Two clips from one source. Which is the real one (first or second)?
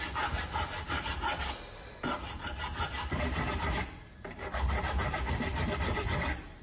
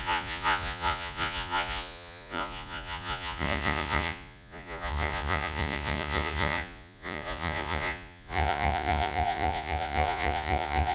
first